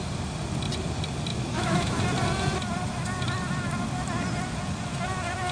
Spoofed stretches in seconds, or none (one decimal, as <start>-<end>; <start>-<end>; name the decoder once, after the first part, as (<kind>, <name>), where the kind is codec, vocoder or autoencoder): 1.3-2.0 (autoencoder, DAC-VAE)